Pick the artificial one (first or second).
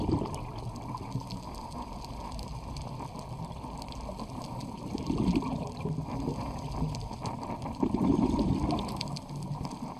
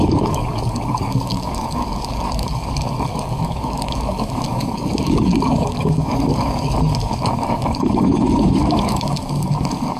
second